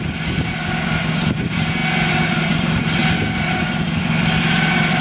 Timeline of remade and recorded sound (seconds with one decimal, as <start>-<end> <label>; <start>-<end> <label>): 0.0-5.0 recorded